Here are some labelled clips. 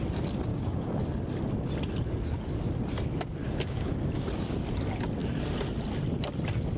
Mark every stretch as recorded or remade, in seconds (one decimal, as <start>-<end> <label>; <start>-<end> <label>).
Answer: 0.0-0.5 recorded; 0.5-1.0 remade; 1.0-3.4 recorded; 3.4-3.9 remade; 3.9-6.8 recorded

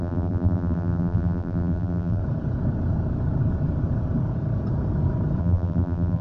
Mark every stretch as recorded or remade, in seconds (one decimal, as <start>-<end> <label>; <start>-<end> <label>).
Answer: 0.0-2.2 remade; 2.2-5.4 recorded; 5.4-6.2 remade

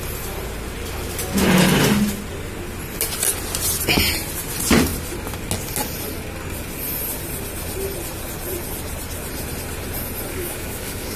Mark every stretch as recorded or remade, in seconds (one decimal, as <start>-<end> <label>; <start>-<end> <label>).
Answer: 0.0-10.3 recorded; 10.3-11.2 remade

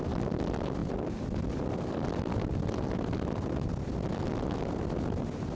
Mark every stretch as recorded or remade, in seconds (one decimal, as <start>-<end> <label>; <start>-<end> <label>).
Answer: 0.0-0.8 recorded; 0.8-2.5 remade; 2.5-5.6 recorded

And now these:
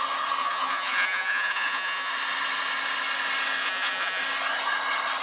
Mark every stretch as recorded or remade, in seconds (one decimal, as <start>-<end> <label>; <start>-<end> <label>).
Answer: 0.0-0.4 recorded; 0.4-2.1 remade; 2.1-3.6 recorded; 3.6-4.2 remade; 4.2-5.2 recorded

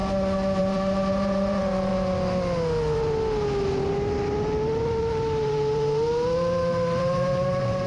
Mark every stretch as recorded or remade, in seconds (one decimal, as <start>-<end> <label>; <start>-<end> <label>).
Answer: 0.0-0.6 recorded; 0.6-1.9 remade; 1.9-4.9 recorded; 4.9-7.9 remade

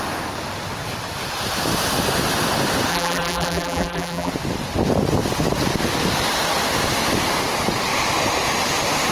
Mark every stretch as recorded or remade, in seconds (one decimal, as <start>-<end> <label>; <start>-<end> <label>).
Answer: 0.0-2.9 recorded; 2.9-4.3 remade; 4.3-9.1 recorded

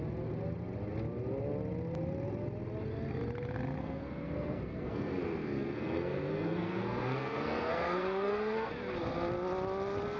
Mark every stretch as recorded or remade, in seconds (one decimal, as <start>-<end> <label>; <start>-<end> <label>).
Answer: 0.0-3.8 recorded; 3.8-8.7 remade; 8.7-10.2 recorded